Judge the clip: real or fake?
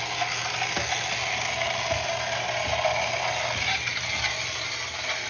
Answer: real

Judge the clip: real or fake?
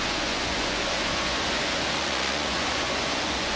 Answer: fake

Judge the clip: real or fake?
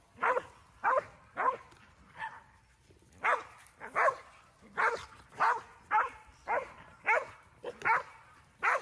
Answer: real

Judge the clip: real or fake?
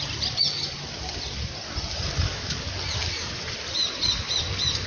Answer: real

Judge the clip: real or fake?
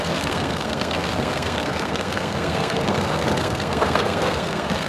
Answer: fake